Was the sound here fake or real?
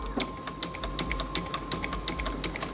real